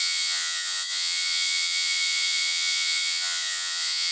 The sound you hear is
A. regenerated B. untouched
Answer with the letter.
A